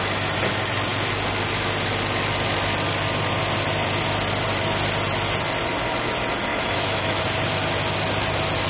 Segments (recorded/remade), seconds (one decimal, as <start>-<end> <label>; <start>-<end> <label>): 0.0-6.5 recorded; 6.5-7.2 remade; 7.2-8.7 recorded